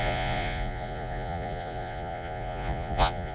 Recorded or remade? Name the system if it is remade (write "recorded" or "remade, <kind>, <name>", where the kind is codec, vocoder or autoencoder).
remade, vocoder, Vocos